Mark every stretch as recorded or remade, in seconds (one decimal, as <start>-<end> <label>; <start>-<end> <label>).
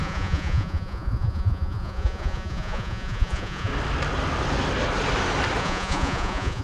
0.0-3.7 remade; 3.7-5.6 recorded; 5.6-6.6 remade